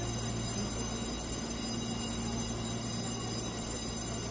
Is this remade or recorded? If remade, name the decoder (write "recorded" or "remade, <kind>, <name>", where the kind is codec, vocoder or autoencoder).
recorded